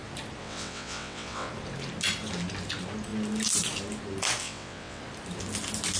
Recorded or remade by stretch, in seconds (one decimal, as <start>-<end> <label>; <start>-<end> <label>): 0.0-0.4 recorded; 0.4-1.5 remade; 1.5-4.4 recorded; 4.4-5.0 remade; 5.0-6.0 recorded